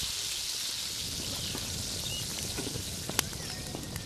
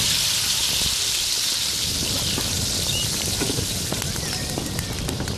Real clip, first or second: first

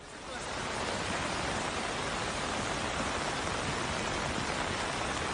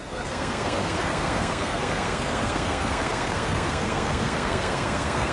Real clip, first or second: first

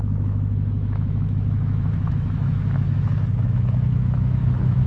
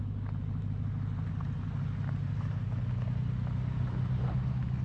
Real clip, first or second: second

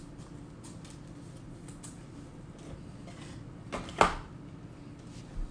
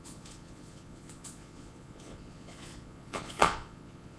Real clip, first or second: first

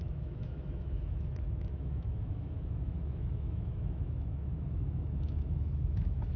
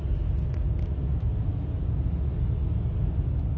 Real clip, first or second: second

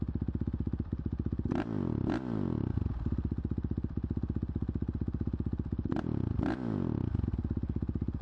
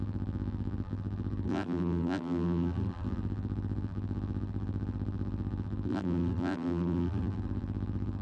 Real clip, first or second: first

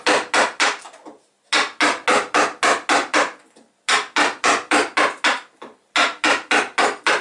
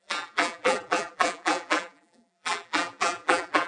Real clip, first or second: first